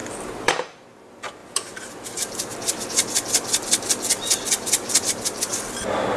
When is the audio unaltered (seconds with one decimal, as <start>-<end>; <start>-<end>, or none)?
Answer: 0.5-1.4; 5.1-6.2